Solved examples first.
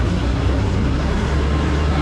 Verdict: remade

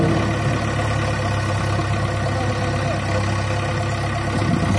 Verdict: recorded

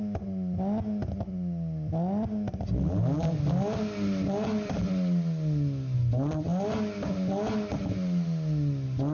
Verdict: recorded